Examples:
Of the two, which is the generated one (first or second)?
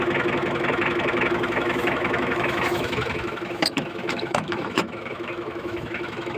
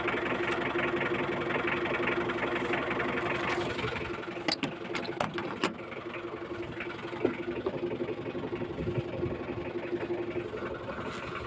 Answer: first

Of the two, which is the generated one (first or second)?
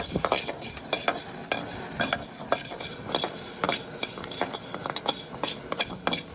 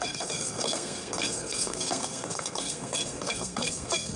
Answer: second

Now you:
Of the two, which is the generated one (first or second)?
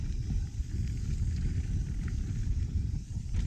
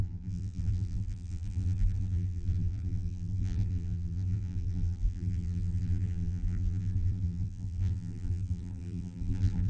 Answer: second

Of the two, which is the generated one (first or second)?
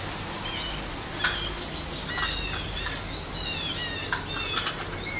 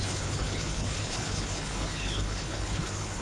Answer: second